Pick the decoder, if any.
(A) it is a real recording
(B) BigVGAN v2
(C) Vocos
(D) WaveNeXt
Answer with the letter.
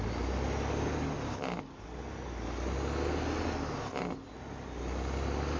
A